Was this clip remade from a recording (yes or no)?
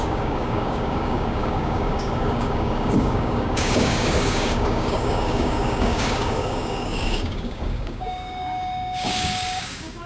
yes